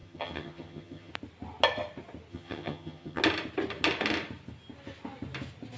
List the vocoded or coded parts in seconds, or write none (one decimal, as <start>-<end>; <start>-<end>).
0.0-1.1; 2.3-3.2